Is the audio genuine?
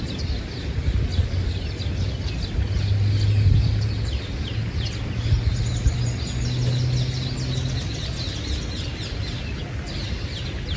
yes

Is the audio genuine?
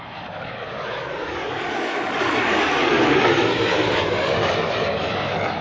no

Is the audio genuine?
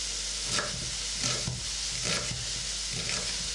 yes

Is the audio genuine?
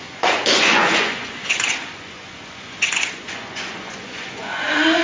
no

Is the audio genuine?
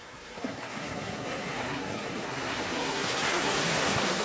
no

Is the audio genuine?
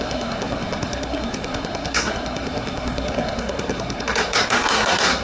no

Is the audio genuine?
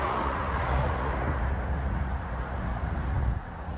no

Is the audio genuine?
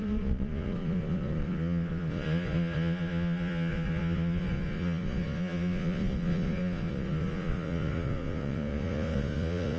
no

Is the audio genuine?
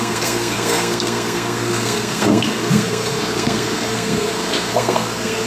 no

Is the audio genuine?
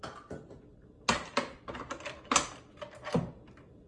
yes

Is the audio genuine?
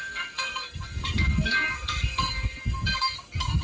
no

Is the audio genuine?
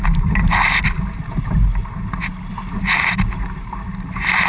yes